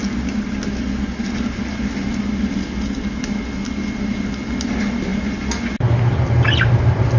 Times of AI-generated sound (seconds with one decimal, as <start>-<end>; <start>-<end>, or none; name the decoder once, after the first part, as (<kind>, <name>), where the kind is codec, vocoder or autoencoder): none